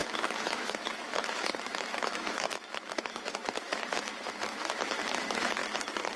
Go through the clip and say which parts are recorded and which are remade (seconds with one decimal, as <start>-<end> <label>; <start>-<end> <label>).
0.0-5.6 remade; 5.6-6.2 recorded